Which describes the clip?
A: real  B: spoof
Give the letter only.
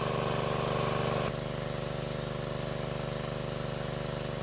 A